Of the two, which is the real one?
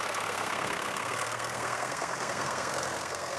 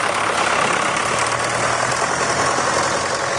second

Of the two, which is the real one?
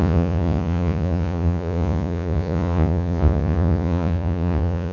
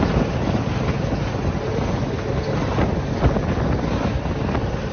second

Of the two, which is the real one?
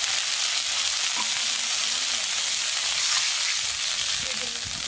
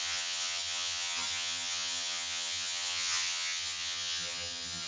first